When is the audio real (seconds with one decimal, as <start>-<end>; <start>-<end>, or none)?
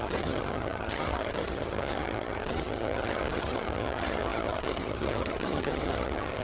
none